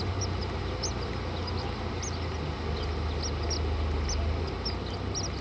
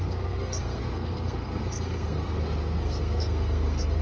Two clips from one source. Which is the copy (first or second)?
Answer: second